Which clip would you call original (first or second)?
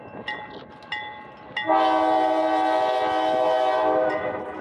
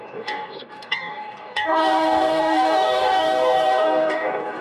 first